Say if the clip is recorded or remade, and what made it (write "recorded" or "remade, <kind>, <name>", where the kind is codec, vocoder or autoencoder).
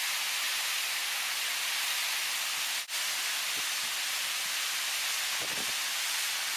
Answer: recorded